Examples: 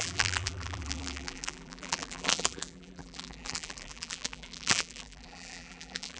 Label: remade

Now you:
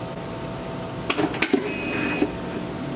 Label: recorded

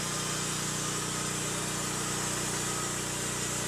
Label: recorded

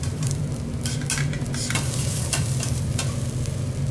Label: remade